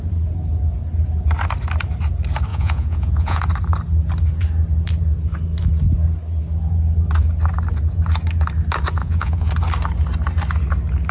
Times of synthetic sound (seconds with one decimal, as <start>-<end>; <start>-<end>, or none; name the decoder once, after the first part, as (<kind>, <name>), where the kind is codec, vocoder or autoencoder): 2.5-3.4 (vocoder, Vocos); 9.0-9.5